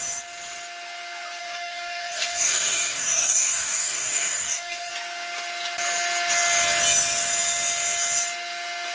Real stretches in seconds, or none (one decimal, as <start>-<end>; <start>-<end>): 0.0-1.4; 4.9-8.9